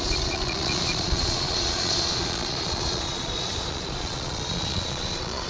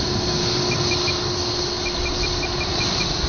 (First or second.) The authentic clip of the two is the second